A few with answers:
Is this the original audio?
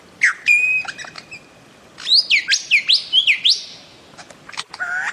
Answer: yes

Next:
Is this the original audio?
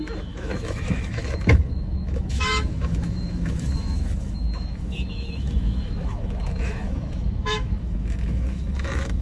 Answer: no